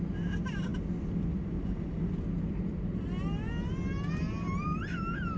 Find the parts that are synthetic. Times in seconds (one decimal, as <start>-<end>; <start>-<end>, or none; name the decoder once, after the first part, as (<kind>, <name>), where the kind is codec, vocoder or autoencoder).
none